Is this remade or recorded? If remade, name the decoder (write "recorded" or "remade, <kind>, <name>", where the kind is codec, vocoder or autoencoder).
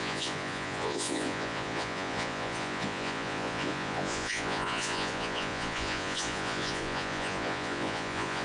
remade, vocoder, Vocos